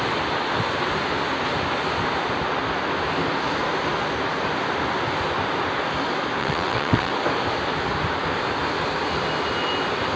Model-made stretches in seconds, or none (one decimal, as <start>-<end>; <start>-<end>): 6.4-7.1